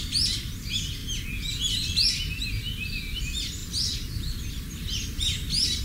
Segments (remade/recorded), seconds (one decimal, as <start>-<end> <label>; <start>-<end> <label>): 0.0-5.8 recorded